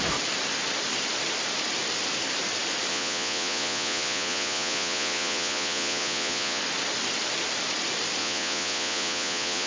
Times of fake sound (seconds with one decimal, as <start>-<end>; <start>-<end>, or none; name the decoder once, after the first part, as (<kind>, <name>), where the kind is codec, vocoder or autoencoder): 2.9-6.6 (vocoder, Vocos); 8.2-9.7